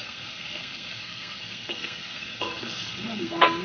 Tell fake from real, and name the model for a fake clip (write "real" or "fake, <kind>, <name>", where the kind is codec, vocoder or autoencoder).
fake, codec, SNAC